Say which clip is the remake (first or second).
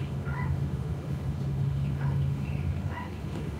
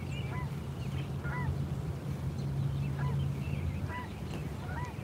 first